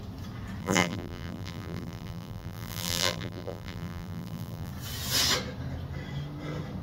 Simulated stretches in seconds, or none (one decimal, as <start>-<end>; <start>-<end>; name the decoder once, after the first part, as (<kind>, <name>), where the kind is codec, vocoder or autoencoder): 0.6-4.7 (vocoder, BigVGAN v2)